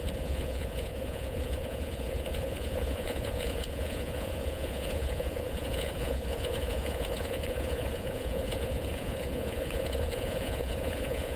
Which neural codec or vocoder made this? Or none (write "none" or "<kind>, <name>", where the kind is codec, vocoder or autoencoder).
vocoder, Vocos